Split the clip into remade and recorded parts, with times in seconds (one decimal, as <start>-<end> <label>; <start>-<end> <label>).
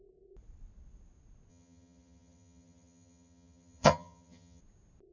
0.0-1.5 recorded; 1.5-4.6 remade; 4.6-5.1 recorded